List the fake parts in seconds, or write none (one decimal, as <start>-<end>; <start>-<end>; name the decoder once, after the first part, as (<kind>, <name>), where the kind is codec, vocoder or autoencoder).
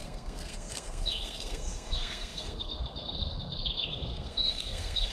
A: 0.0-5.1 (codec, SNAC)